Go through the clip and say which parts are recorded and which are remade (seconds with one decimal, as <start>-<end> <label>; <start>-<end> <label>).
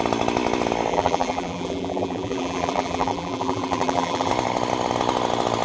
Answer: 0.0-0.9 recorded; 0.9-4.3 remade; 4.3-5.6 recorded